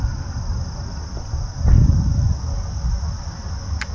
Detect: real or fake real